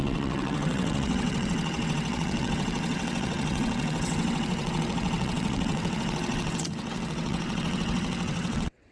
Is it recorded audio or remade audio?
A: remade